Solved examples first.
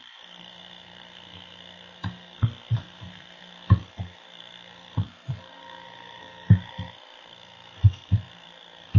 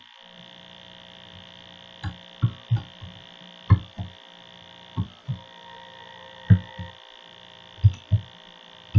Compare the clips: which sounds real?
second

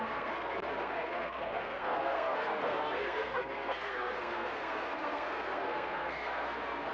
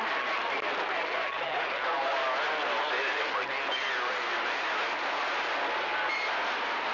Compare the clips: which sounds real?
second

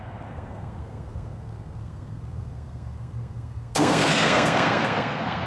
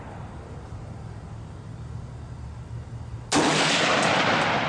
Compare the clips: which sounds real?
second